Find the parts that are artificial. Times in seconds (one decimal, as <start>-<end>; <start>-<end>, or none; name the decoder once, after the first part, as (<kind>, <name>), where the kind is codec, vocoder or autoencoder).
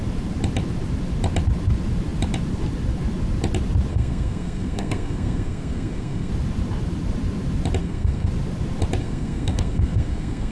3.9-6.3 (codec, SNAC); 7.8-8.3; 9.0-10.5